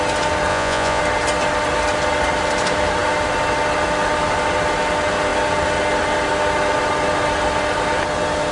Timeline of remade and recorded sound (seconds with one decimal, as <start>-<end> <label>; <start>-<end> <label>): 0.0-0.5 recorded; 0.5-1.0 remade; 1.0-8.5 recorded